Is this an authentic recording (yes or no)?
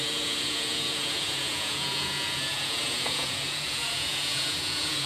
no